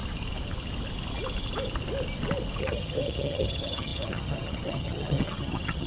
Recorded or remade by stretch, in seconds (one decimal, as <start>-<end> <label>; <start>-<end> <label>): 0.0-2.6 recorded; 2.6-5.9 remade